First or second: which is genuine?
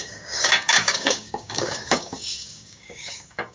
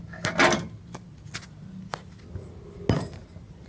second